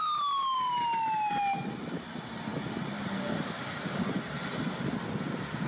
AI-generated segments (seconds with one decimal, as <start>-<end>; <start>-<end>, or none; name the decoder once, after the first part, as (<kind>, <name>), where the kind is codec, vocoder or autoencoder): none